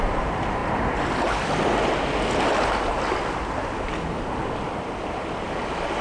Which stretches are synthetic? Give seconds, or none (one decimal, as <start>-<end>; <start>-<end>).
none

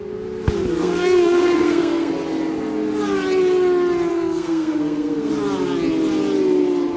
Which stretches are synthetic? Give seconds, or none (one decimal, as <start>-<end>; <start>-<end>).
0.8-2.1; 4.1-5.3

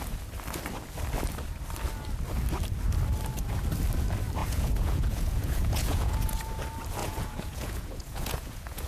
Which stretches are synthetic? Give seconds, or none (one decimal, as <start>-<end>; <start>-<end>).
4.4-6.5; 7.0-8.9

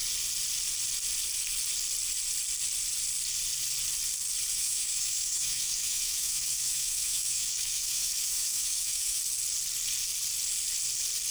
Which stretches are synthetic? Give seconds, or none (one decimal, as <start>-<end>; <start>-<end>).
4.5-9.2

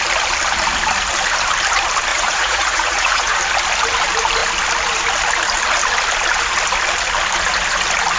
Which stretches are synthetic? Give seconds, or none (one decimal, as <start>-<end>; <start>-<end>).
2.1-3.4

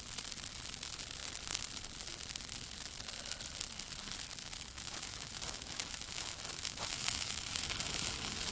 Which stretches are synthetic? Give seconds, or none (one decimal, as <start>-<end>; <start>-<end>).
4.4-7.6